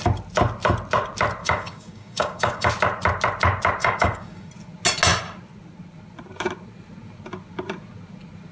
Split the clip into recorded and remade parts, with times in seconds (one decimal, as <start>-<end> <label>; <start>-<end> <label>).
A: 0.0-1.4 recorded; 1.4-2.7 remade; 2.7-3.8 recorded; 3.8-4.5 remade; 4.5-8.5 recorded